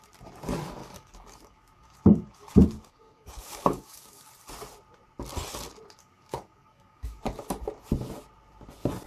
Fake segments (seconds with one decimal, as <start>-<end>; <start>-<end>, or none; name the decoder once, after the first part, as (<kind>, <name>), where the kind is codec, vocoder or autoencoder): 0.8-4.3 (codec, DAC); 6.0-7.2